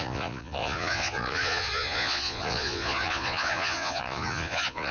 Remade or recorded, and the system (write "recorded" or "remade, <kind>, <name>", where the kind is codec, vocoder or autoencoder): remade, vocoder, Vocos